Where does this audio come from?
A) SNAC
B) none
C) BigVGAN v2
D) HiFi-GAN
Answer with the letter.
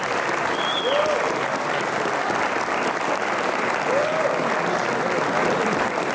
B